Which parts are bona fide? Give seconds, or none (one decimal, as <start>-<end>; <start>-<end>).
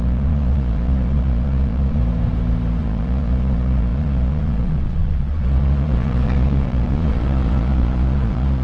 2.0-2.8